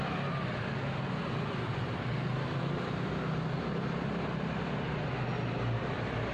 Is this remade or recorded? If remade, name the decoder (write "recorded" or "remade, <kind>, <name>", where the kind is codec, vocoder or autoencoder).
recorded